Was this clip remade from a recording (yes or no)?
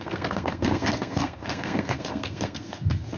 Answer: yes